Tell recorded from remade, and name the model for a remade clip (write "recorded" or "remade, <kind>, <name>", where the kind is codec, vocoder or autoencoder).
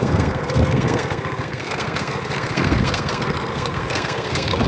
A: remade, codec, SNAC